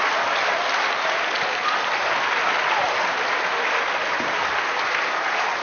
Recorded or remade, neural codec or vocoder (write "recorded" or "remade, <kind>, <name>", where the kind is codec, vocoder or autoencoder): recorded